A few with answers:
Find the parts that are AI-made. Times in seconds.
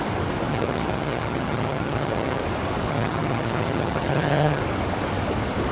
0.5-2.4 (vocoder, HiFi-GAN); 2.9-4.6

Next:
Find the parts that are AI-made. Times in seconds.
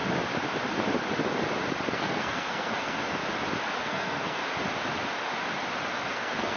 1.9-3.2 (codec, SNAC); 3.8-4.4; 6.1-6.6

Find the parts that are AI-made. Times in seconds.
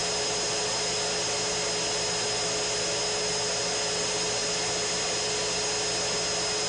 4.0-4.4 (vocoder, BigVGAN v2)